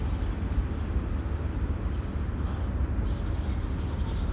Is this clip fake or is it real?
real